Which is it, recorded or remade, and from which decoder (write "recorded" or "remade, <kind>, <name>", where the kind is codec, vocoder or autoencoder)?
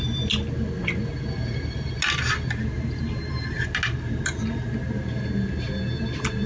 recorded